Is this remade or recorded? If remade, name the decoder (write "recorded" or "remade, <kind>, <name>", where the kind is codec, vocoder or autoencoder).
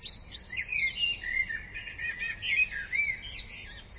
recorded